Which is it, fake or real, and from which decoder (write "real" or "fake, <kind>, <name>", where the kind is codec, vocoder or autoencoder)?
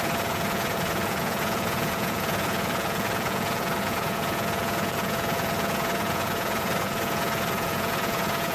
fake, vocoder, Vocos